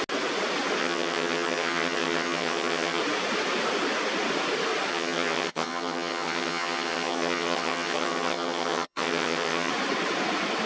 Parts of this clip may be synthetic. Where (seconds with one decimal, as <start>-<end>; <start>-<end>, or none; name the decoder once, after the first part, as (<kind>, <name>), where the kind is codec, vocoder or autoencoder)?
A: 0.8-3.0 (vocoder, HiFi-GAN); 4.9-9.7